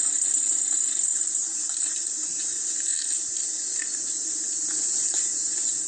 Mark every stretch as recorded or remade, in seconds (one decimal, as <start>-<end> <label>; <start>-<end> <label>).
0.0-5.9 recorded

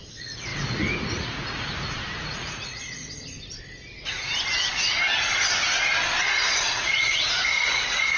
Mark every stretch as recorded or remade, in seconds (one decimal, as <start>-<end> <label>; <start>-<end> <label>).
0.0-3.0 remade; 3.0-6.6 recorded; 6.6-8.2 remade

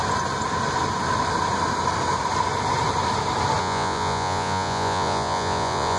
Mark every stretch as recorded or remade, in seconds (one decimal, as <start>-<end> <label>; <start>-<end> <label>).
0.0-3.6 recorded; 3.6-6.0 remade

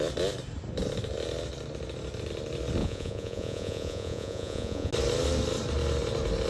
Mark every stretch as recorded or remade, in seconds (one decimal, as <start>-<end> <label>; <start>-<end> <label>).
0.0-2.8 recorded; 2.8-4.9 remade; 4.9-6.5 recorded

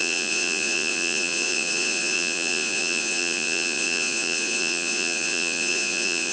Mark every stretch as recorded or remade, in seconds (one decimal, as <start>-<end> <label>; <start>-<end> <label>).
0.0-6.3 remade

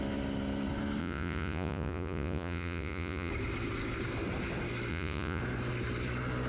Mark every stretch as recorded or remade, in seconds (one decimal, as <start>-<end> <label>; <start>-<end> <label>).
0.0-1.0 recorded; 1.0-3.3 remade; 3.3-4.9 recorded; 4.9-5.4 remade; 5.4-6.5 recorded

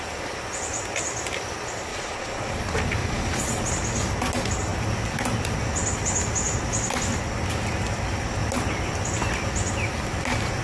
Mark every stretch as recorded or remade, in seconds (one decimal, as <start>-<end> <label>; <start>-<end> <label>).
0.0-1.9 recorded; 1.9-2.6 remade; 2.6-3.0 recorded; 3.0-3.7 remade; 3.7-10.6 recorded

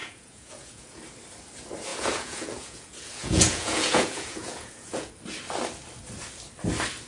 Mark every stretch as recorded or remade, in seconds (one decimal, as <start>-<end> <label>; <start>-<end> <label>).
0.0-1.0 remade; 1.0-1.9 recorded; 1.9-5.1 remade; 5.1-7.1 recorded